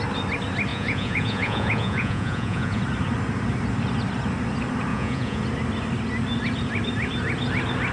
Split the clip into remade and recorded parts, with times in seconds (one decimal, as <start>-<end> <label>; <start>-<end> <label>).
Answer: 0.0-0.7 recorded; 0.7-2.8 remade; 2.8-4.9 recorded; 4.9-5.4 remade; 5.4-7.9 recorded